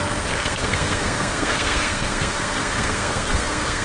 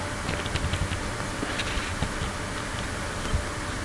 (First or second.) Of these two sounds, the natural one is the second